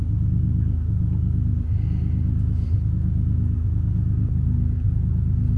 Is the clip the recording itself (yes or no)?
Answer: yes